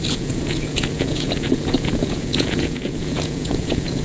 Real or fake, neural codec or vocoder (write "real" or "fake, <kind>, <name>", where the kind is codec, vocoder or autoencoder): fake, vocoder, Vocos